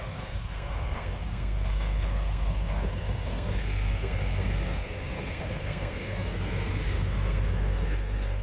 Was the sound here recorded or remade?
remade